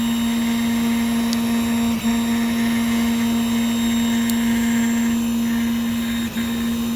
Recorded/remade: recorded